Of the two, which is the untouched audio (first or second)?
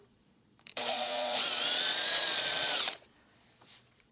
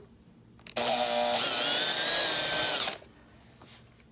second